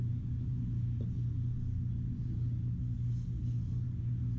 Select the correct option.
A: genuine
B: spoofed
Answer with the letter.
A